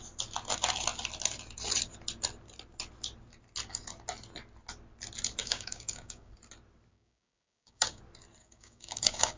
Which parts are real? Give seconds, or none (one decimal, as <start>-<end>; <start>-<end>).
0.0-5.4; 6.3-6.9; 8.0-8.4